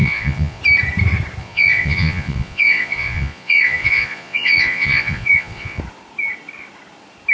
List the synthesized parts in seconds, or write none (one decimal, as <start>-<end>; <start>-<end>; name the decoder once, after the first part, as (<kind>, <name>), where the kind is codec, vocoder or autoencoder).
0.0-0.6 (vocoder, Vocos); 1.4-5.8